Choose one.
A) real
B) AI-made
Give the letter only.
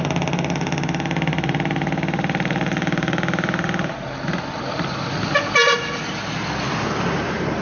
A